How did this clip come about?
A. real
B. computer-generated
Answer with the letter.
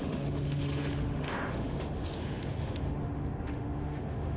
B